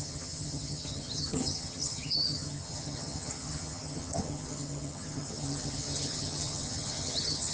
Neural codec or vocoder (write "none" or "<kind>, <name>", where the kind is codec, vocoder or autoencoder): vocoder, HiFi-GAN